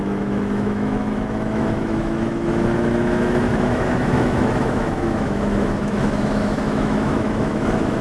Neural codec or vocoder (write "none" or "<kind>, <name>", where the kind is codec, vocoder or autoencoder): autoencoder, DAC-VAE